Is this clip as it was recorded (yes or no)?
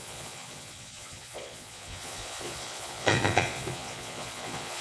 no